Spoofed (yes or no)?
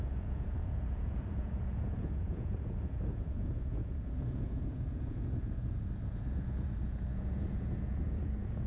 yes